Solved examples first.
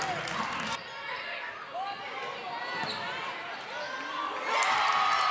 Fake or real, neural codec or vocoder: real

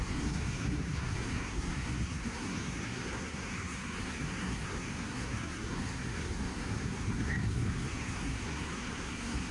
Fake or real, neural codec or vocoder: fake, codec, SNAC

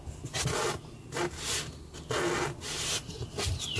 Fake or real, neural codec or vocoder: real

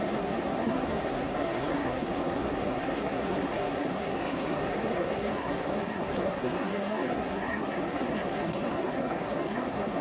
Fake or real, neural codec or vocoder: fake, codec, SNAC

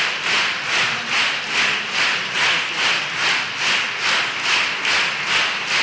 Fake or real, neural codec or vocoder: real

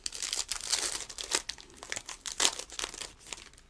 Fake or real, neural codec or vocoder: real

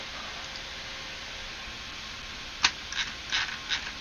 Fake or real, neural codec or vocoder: real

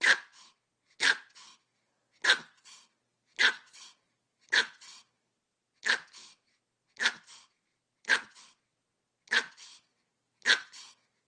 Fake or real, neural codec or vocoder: real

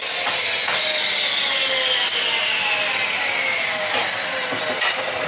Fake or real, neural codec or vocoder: real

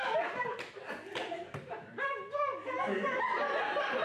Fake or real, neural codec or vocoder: real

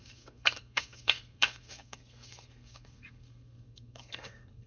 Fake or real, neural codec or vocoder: fake, codec, SNAC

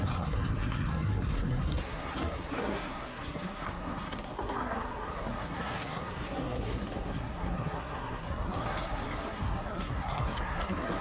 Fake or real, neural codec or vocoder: fake, codec, SNAC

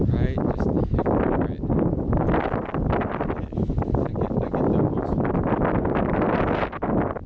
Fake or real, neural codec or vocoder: real